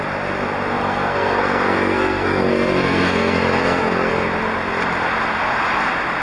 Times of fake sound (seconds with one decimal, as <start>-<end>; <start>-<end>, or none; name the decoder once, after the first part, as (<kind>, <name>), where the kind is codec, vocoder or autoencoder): 0.8-4.1 (codec, SNAC)